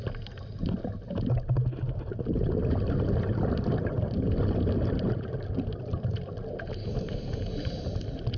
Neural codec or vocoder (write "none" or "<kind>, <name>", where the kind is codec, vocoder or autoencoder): none